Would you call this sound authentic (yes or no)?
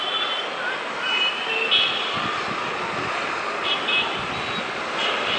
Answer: yes